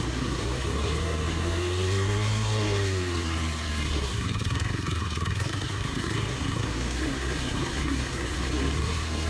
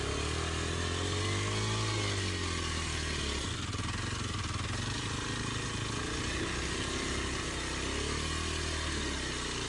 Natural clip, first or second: second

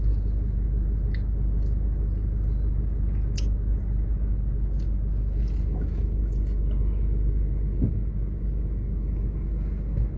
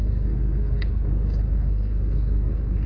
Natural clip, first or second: first